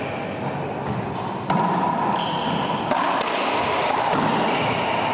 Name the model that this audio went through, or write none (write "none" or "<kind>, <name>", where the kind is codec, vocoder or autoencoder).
none